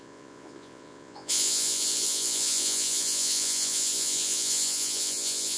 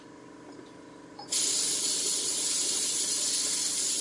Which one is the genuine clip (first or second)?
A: second